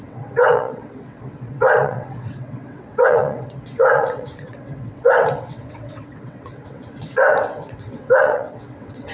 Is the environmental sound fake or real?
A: fake